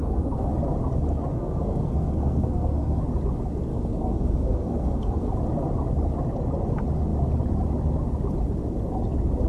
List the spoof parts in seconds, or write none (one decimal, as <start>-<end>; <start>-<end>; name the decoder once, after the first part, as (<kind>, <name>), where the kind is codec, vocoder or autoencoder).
0.0-0.5 (codec, SNAC); 1.3-3.0; 3.7-5.3